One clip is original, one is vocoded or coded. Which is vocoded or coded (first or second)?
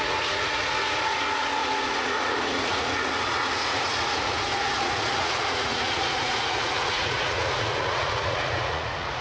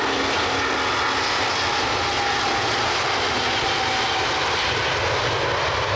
first